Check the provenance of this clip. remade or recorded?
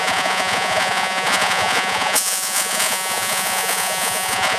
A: remade